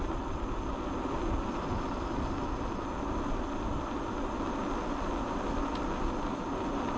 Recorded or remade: recorded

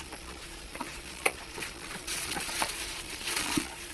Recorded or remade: remade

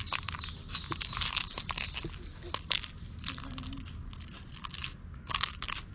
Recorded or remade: recorded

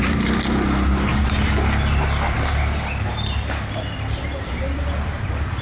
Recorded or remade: recorded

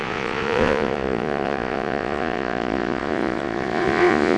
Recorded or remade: remade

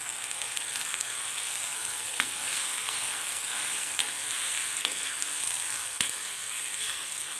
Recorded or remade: remade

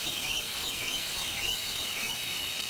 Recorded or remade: remade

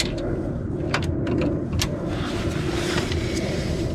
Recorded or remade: recorded